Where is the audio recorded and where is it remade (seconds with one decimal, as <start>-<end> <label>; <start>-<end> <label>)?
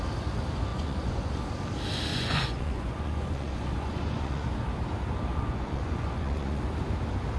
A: 0.0-0.7 recorded; 0.7-1.3 remade; 1.3-2.1 recorded; 2.1-4.5 remade; 4.5-5.3 recorded; 5.3-6.6 remade; 6.6-7.4 recorded